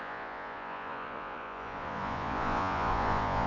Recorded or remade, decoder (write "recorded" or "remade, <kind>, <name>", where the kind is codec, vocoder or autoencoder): remade, vocoder, Vocos